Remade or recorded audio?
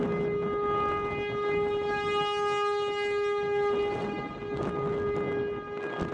recorded